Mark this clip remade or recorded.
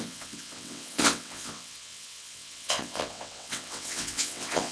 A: remade